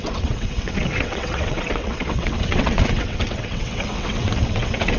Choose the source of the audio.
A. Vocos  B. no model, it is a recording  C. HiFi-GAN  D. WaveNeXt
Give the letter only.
D